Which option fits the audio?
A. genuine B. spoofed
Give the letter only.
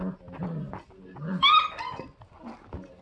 A